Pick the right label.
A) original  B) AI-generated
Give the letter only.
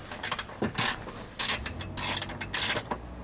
A